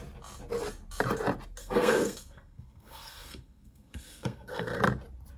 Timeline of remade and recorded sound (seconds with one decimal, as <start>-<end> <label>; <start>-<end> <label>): 0.0-1.6 recorded; 1.6-4.8 remade; 4.8-5.4 recorded